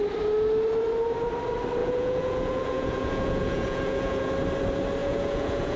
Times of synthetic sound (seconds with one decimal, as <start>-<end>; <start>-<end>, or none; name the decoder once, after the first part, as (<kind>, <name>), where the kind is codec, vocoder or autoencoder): 1.8-4.3 (vocoder, Vocos); 5.0-5.8